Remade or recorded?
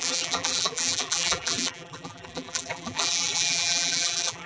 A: remade